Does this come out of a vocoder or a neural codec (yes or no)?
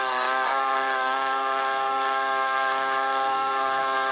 yes